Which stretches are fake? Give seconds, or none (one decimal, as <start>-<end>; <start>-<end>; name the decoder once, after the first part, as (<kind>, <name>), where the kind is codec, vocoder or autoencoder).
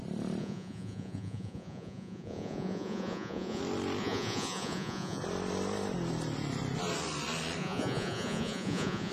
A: 0.4-3.6 (vocoder, Vocos); 4.0-5.2; 7.6-9.1